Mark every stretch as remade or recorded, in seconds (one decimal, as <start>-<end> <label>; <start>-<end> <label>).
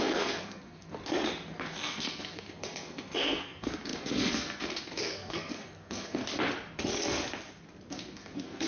0.0-1.0 remade; 1.0-1.6 recorded; 1.6-6.2 remade; 6.2-7.9 recorded; 7.9-8.7 remade